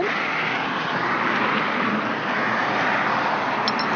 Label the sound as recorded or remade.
recorded